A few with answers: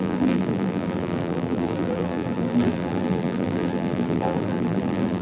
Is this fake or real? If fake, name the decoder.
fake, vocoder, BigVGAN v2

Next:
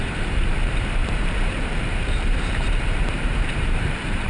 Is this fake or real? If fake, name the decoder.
fake, vocoder, BigVGAN v2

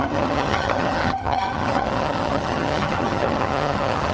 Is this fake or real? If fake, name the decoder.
fake, vocoder, HiFi-GAN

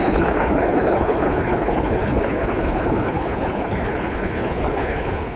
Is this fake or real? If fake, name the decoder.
fake, codec, HILCodec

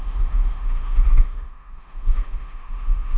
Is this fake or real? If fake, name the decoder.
fake, autoencoder, DAC-VAE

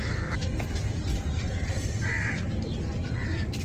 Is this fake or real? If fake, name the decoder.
real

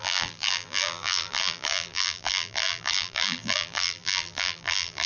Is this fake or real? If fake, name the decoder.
fake, vocoder, BigVGAN v2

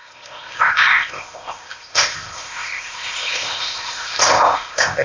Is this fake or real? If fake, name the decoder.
fake, codec, ZipCodec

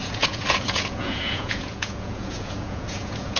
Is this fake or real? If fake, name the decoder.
fake, vocoder, Vocos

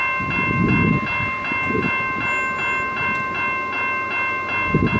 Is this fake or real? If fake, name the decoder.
real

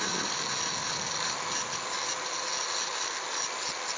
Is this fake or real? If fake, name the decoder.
real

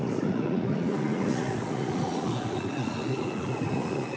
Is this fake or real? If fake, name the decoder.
fake, vocoder, Vocos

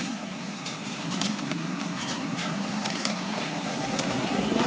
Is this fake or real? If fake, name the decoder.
fake, codec, SNAC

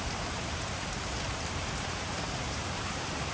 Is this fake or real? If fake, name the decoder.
fake, vocoder, BigVGAN v2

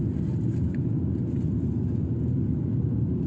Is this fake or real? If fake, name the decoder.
real